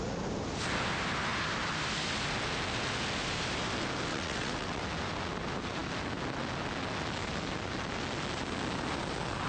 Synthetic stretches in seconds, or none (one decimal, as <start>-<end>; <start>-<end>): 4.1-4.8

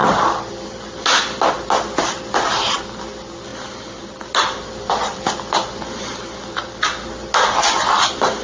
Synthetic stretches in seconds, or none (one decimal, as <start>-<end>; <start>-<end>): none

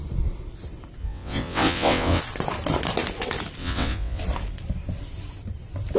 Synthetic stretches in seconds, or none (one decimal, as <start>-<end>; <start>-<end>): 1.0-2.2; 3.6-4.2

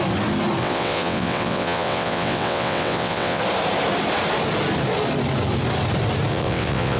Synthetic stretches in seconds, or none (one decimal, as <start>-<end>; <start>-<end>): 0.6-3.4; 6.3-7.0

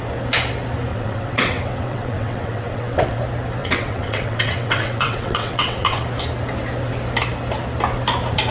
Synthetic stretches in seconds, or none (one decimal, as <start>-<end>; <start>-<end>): 0.9-3.2; 3.6-6.0